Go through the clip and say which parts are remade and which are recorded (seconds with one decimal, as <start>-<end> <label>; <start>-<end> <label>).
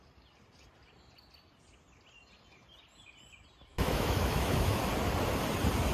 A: 0.0-3.7 recorded; 3.7-4.8 remade; 4.8-5.9 recorded